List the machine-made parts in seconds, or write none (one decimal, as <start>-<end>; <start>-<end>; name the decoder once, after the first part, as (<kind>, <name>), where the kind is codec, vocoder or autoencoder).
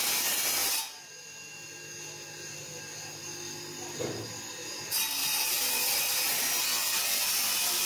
5.2-5.7 (vocoder, BigVGAN v2)